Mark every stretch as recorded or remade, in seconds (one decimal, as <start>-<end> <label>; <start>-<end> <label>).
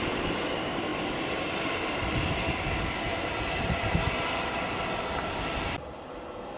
0.0-6.6 recorded